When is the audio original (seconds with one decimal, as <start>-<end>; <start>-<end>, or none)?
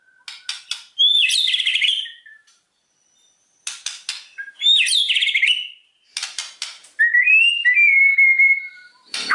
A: 0.0-1.7; 2.7-9.3